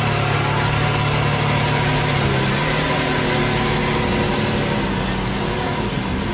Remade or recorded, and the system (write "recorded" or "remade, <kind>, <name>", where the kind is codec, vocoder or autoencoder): recorded